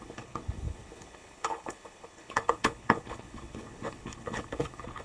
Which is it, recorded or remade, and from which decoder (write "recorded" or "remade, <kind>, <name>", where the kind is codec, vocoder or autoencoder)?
remade, codec, HILCodec